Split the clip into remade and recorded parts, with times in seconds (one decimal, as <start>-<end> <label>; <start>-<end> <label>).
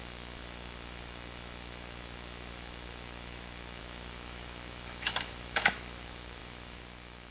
0.0-7.3 remade